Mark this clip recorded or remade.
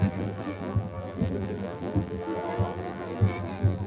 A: remade